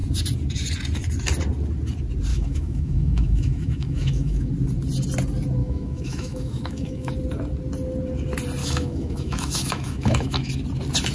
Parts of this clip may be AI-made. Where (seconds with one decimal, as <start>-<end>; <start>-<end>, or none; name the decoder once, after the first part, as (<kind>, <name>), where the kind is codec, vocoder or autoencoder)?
2.3-4.5 (autoencoder, DAC-VAE); 5.6-7.1; 8.6-10.5